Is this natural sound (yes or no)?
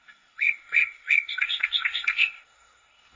no